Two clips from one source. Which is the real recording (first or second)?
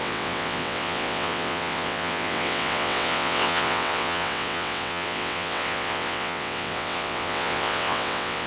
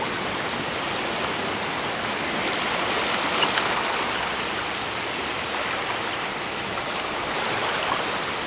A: second